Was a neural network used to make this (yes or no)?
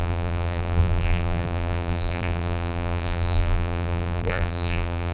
yes